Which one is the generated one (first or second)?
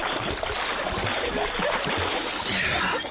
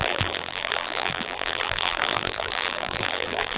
second